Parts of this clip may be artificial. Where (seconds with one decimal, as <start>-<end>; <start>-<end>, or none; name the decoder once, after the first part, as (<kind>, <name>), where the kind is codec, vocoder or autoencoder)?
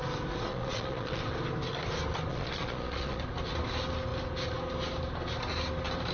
0.5-1.2 (vocoder, Vocos); 2.3-3.2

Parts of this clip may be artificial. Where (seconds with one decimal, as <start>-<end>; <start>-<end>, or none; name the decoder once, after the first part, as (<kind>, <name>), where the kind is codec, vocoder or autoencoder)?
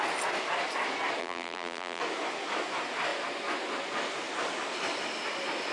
1.2-2.0 (vocoder, BigVGAN v2)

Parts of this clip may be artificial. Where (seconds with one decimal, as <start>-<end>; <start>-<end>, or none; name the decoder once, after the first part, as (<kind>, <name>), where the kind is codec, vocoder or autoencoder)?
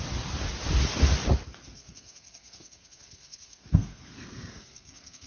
1.7-5.3 (codec, SNAC)